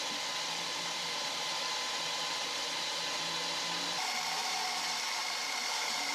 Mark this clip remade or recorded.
remade